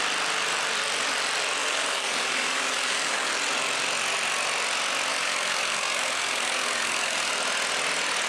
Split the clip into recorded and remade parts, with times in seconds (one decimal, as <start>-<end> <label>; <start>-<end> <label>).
0.0-1.6 recorded; 1.6-3.3 remade; 3.3-5.1 recorded; 5.1-7.3 remade; 7.3-8.3 recorded